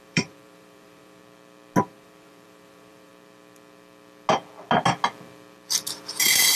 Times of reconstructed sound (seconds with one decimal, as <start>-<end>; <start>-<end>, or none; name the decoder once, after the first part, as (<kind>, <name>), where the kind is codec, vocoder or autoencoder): 0.0-1.2 (vocoder, BigVGAN v2); 1.8-3.1; 5.9-6.6